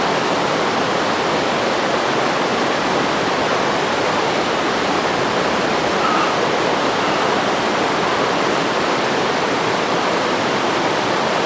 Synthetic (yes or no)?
no